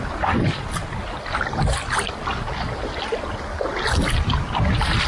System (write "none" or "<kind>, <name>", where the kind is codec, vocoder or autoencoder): none